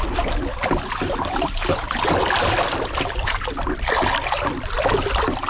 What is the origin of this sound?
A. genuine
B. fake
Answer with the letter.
A